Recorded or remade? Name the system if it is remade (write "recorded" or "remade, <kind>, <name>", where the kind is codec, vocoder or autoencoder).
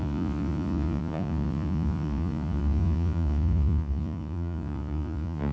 remade, vocoder, Vocos